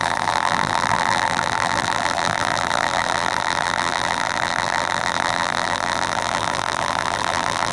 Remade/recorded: remade